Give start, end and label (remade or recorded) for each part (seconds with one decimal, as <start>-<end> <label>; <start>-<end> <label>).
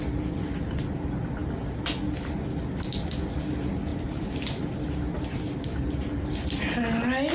0.0-3.9 recorded; 3.9-5.5 remade; 5.5-7.3 recorded